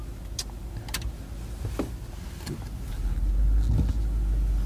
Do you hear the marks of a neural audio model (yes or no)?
no